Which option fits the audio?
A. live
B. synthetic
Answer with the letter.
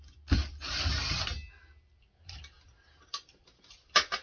A